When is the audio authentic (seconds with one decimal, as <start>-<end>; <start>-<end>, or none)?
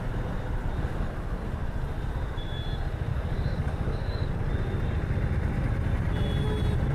0.0-3.1; 4.4-6.9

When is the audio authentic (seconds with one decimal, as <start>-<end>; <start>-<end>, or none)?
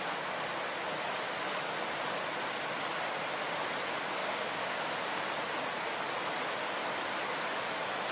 0.0-4.2; 4.9-8.1